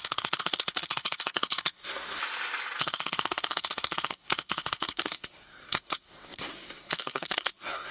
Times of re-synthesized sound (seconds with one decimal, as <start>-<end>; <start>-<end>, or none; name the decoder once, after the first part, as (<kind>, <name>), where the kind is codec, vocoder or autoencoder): 0.0-2.2 (codec, SNAC); 2.8-7.9